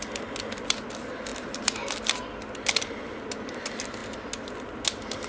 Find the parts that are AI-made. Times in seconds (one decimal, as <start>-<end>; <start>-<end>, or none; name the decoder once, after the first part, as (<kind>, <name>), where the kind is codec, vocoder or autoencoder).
1.3-2.1 (vocoder, BigVGAN v2)